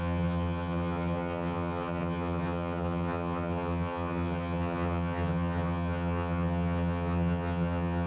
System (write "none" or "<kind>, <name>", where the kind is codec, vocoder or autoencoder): vocoder, HiFi-GAN